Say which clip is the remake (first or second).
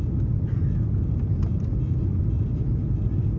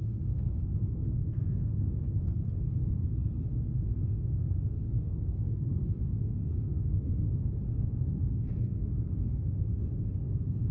second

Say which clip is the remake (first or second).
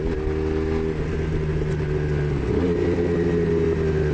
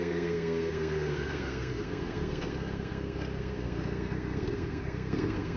second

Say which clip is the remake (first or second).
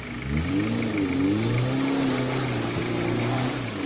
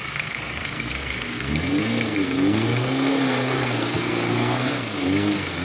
second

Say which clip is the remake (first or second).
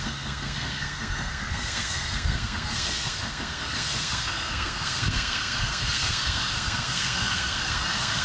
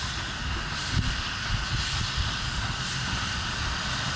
first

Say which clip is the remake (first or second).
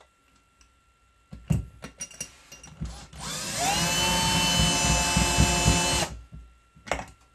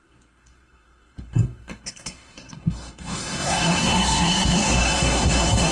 second